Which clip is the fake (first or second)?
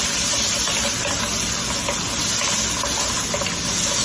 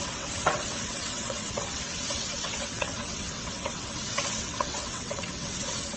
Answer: second